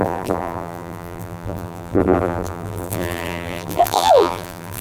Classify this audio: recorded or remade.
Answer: remade